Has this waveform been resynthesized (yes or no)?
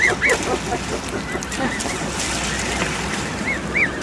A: no